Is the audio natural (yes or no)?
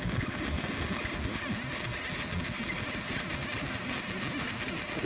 yes